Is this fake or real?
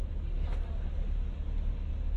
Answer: real